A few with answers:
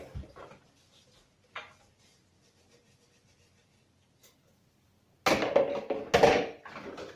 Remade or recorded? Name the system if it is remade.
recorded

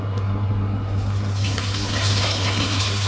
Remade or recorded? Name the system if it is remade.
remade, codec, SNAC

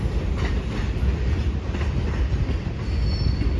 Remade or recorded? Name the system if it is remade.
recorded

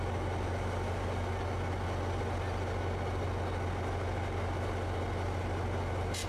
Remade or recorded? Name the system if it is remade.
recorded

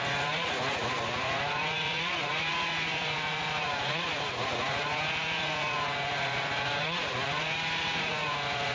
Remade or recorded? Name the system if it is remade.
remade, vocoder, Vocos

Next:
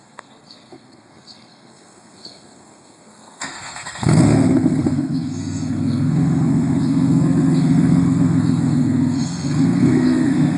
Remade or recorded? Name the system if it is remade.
remade, codec, SNAC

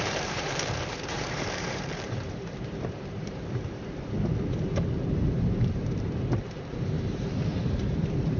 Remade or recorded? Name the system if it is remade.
remade, vocoder, BigVGAN v2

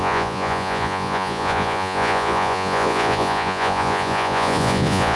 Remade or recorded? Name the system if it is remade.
remade, vocoder, Vocos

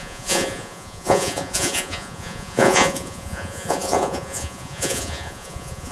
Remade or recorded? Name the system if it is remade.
remade, vocoder, Vocos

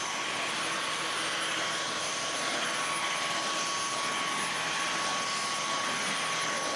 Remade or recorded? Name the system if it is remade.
recorded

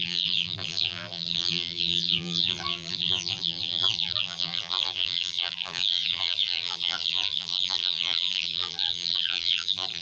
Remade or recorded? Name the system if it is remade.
remade, vocoder, BigVGAN v2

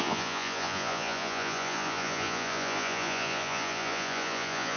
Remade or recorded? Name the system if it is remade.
remade, vocoder, Vocos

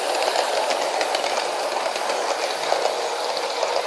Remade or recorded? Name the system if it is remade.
recorded